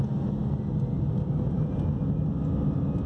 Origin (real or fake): real